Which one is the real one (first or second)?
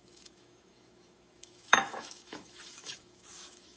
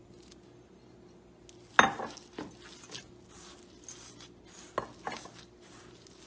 second